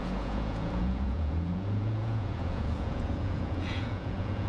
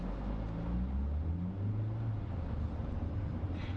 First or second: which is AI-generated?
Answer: first